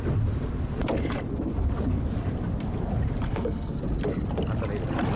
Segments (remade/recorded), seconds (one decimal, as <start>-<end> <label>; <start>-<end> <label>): 0.0-3.3 recorded; 3.3-3.8 remade; 3.8-5.2 recorded